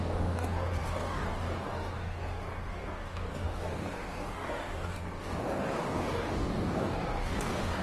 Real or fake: fake